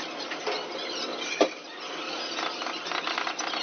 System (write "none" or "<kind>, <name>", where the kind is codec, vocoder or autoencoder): none